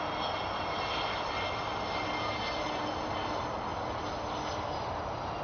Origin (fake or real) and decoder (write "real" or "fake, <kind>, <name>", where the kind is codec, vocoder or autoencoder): real